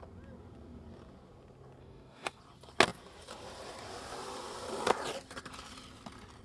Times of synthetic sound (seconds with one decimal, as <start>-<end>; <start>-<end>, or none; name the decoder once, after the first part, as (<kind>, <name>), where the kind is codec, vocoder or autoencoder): 1.8-2.4 (codec, DAC)